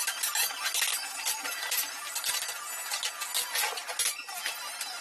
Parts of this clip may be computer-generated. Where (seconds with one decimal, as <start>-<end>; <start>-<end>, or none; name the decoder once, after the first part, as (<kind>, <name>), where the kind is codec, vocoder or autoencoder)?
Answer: none